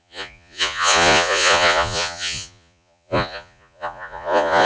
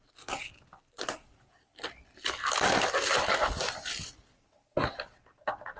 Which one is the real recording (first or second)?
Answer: second